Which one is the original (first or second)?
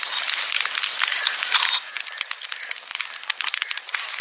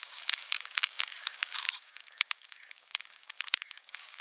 first